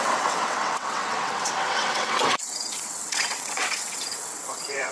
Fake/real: fake